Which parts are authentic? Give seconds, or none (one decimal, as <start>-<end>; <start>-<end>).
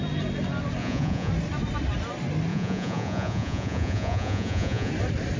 0.0-0.8; 1.3-2.5; 4.9-5.4